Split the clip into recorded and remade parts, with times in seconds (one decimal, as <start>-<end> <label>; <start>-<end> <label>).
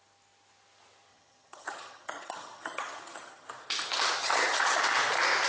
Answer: 0.0-1.1 recorded; 1.1-3.5 remade; 3.5-4.2 recorded; 4.2-4.8 remade; 4.8-5.5 recorded